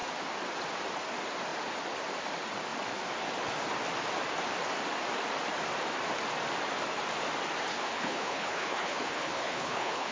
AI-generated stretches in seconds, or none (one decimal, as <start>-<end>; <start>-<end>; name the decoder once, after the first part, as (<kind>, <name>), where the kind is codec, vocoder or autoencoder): 7.7-10.1 (codec, HILCodec)